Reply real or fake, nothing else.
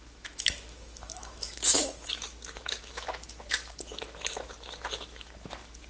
fake